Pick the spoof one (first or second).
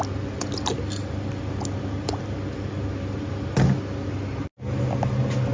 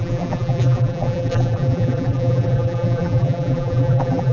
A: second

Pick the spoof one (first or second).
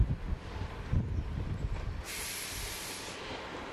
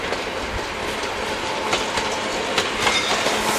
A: first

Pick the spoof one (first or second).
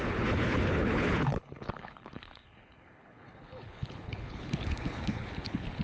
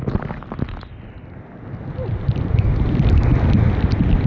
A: first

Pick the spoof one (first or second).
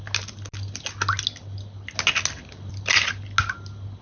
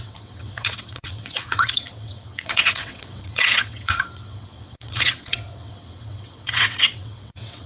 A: second